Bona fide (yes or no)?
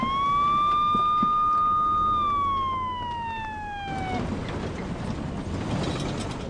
yes